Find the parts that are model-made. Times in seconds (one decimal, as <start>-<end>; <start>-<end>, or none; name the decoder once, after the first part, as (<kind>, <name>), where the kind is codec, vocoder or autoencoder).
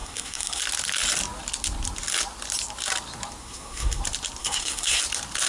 0.0-0.6 (codec, SNAC); 3.4-4.0; 4.4-5.0